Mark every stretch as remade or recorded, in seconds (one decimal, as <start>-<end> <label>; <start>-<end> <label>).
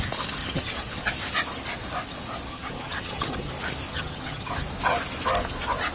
0.0-0.4 recorded; 0.4-1.1 remade; 1.1-2.5 recorded; 2.5-3.5 remade; 3.5-3.9 recorded; 3.9-4.5 remade; 4.5-5.9 recorded